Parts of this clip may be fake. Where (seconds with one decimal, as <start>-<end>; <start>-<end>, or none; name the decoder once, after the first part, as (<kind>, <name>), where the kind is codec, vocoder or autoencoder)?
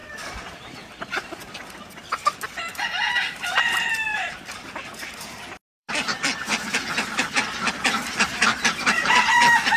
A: 0.0-1.0 (vocoder, BigVGAN v2); 4.1-9.3